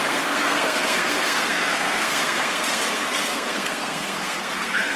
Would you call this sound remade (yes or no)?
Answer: yes